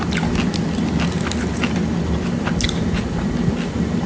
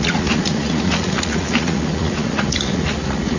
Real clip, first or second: first